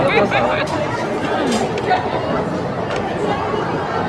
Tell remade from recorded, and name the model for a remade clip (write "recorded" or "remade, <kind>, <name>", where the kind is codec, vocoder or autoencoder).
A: recorded